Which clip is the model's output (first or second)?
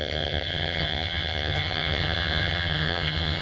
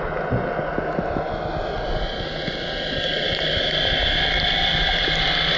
first